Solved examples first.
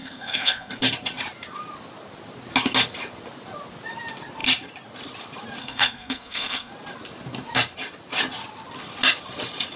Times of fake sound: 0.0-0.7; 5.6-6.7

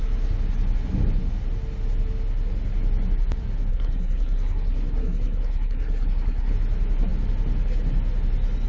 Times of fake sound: 3.7-6.5

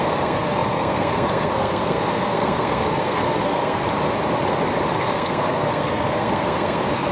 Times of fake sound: 0.0-3.8; 5.0-7.1